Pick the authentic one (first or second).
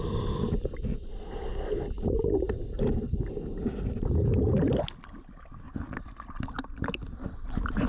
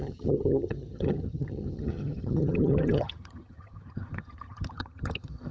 first